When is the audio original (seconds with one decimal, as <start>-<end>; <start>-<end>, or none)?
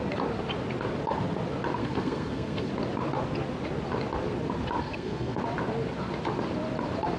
0.0-1.8; 2.7-4.8; 5.4-7.2